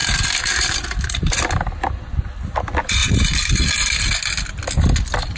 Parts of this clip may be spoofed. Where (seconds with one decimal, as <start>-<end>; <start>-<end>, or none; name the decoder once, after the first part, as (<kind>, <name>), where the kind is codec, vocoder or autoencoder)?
0.0-1.4 (vocoder, BigVGAN v2); 3.0-3.7